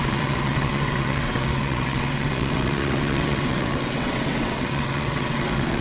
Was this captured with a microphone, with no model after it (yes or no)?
no